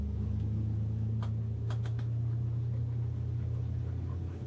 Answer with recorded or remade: recorded